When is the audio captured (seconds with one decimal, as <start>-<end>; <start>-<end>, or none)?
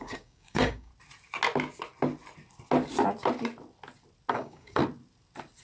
0.9-4.3; 4.8-5.6